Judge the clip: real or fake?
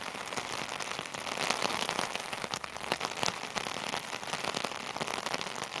real